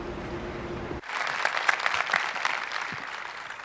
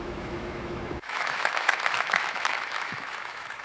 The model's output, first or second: second